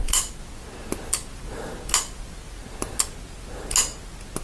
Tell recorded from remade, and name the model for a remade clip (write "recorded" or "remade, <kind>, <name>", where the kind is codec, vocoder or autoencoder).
recorded